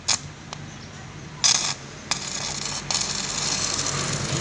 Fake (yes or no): no